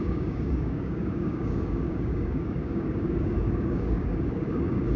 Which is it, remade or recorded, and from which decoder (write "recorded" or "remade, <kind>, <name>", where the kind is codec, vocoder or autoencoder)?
remade, codec, DAC